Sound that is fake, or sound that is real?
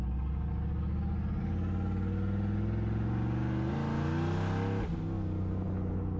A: real